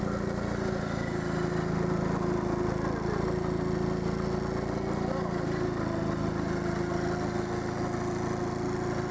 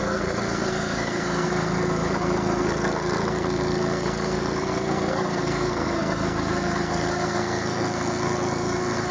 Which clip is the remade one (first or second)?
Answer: second